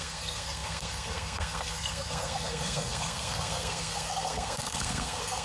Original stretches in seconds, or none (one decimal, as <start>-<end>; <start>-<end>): none